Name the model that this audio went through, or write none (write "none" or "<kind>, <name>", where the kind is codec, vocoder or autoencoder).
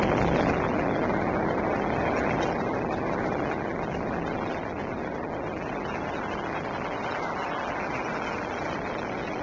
none